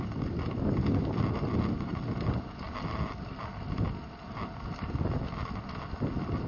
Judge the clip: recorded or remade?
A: recorded